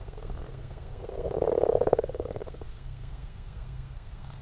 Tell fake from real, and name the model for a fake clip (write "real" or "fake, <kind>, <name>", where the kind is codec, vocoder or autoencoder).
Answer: fake, codec, SNAC